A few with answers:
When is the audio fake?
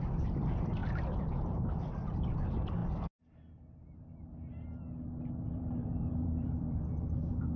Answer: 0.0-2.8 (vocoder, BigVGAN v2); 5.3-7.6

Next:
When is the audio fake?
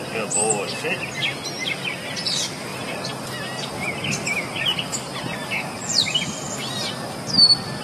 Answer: none